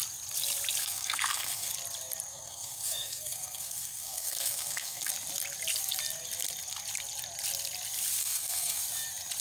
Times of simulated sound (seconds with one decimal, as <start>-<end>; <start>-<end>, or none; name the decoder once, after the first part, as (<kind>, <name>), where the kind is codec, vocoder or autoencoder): 0.8-1.7 (codec, SNAC); 2.3-5.1; 8.2-8.8